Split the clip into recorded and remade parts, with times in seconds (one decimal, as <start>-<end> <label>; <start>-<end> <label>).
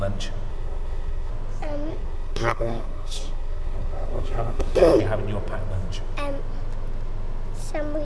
0.0-0.5 recorded; 0.5-1.3 remade; 1.3-1.9 recorded; 1.9-5.0 remade; 5.0-8.0 recorded